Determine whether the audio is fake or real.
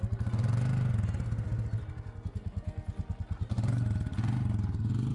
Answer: real